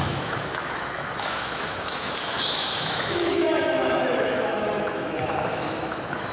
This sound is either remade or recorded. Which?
remade